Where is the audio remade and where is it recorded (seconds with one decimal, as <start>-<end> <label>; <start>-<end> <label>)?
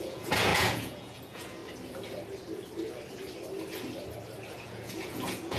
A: 0.0-1.6 remade; 1.6-4.5 recorded; 4.5-5.6 remade